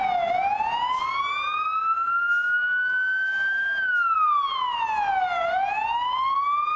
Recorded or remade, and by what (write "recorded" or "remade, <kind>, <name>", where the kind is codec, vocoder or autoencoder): recorded